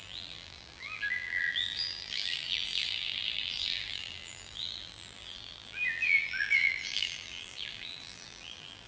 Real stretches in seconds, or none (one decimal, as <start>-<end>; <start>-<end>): none